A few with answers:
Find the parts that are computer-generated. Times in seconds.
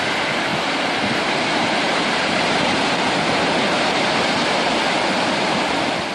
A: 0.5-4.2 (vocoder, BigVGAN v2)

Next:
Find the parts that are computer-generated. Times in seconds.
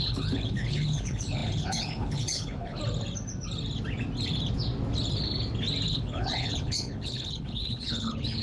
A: 0.0-2.8 (codec, HILCodec); 5.9-8.4